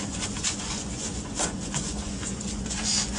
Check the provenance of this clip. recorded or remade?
remade